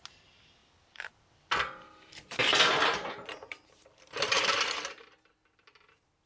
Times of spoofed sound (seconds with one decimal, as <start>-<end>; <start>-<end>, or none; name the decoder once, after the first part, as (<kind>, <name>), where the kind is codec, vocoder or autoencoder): 0.6-1.1 (vocoder, BigVGAN v2); 2.4-4.6